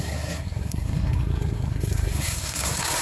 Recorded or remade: remade